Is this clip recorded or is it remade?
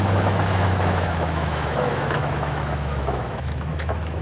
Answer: remade